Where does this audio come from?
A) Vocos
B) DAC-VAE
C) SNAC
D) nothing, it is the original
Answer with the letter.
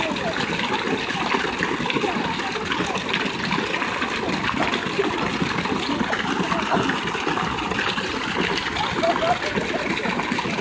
D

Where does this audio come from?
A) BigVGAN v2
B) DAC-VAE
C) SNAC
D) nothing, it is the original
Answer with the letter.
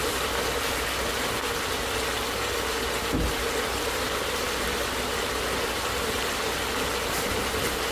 D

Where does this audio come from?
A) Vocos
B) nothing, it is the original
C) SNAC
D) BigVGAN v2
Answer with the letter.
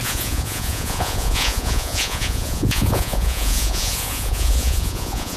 A